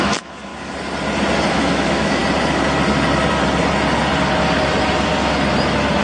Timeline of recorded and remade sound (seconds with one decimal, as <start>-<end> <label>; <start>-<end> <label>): 0.0-0.5 remade; 0.5-1.5 recorded; 1.5-2.2 remade; 2.2-6.0 recorded